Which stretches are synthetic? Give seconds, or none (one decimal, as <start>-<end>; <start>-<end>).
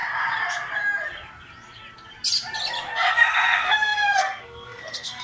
3.1-5.2